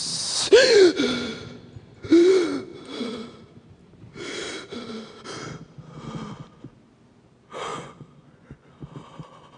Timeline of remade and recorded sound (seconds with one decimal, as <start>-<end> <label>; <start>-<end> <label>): 0.0-2.7 recorded; 2.7-3.4 remade; 3.4-7.7 recorded; 7.7-8.7 remade; 8.7-9.6 recorded